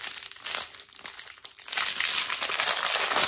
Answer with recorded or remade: recorded